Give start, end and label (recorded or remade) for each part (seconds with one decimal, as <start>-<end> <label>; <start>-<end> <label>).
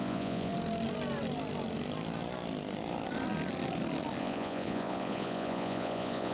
0.0-0.5 remade; 0.5-4.2 recorded; 4.2-6.3 remade